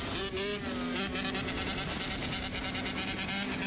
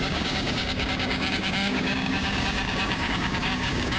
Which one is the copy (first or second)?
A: second